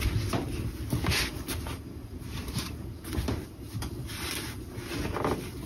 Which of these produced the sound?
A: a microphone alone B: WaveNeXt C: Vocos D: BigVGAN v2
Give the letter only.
A